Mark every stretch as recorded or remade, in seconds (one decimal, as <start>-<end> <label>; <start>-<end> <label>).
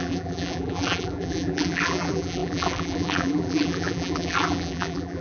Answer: 0.0-5.2 remade